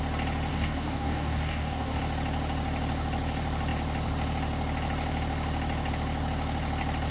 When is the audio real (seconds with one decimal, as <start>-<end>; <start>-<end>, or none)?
0.0-0.5; 2.0-7.1